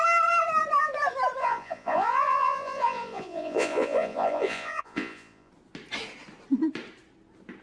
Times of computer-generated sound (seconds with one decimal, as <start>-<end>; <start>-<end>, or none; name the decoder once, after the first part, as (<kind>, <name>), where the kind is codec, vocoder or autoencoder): 1.4-5.5 (vocoder, Vocos)